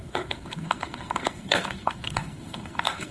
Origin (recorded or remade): remade